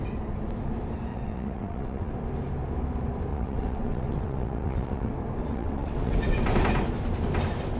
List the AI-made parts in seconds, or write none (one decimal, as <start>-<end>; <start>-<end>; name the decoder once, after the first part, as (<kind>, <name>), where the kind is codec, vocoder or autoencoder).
1.1-2.1 (vocoder, WaveNeXt); 3.3-5.1; 5.5-6.4